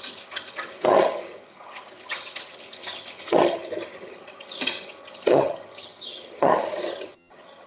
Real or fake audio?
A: fake